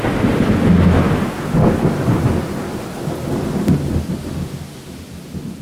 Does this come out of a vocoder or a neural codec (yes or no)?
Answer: no